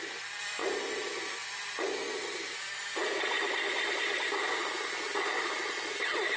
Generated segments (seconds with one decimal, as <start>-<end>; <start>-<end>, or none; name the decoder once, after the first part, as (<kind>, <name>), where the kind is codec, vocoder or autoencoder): none